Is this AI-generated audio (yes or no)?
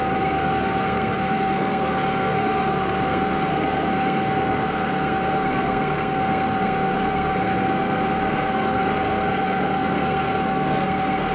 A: yes